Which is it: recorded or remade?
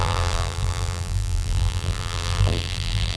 remade